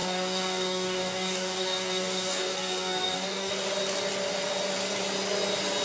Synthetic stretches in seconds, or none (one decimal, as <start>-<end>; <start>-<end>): 0.0-3.5